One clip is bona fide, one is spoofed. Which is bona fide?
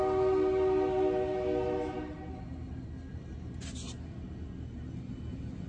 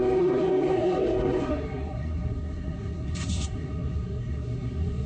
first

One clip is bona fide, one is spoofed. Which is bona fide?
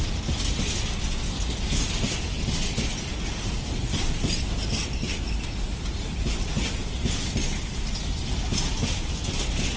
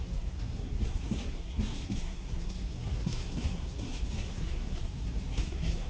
first